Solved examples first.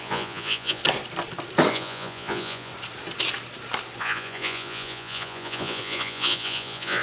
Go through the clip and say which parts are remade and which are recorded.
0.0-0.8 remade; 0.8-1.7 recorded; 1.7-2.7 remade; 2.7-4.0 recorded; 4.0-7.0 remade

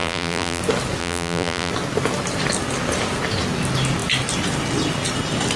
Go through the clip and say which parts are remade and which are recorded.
0.0-0.6 remade; 0.6-1.0 recorded; 1.0-1.7 remade; 1.7-5.6 recorded

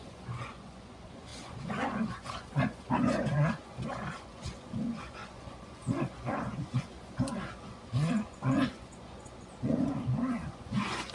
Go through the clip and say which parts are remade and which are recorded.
0.0-11.1 remade

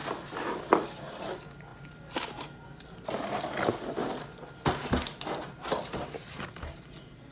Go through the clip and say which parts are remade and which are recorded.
0.0-7.3 recorded

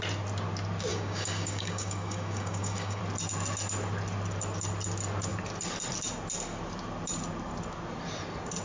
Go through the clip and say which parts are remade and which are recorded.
0.0-0.9 recorded; 0.9-3.0 remade; 3.0-8.6 recorded

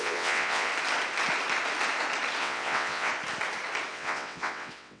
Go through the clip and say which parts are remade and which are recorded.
0.0-0.7 remade; 0.7-2.4 recorded; 2.4-3.1 remade; 3.1-3.9 recorded; 3.9-5.0 remade

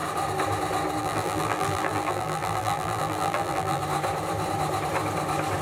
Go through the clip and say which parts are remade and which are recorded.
0.0-1.0 recorded; 1.0-3.8 remade; 3.8-5.6 recorded